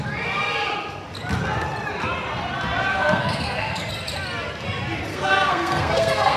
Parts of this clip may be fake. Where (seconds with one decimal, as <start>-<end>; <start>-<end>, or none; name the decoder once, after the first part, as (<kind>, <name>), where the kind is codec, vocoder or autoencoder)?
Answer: 2.9-3.9 (codec, SNAC); 5.1-6.4